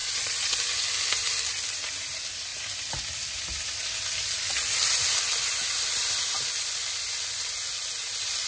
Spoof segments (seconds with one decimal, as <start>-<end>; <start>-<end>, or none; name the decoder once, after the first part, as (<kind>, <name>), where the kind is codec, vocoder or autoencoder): 0.0-0.6 (vocoder, Vocos)